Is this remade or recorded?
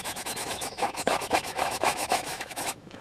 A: remade